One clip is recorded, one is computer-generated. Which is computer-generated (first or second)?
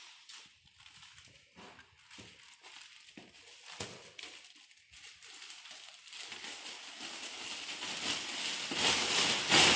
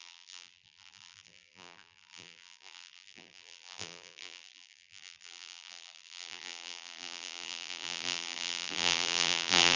second